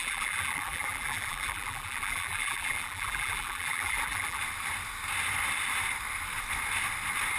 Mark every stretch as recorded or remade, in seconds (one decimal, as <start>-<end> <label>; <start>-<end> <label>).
0.0-4.4 remade; 4.4-7.4 recorded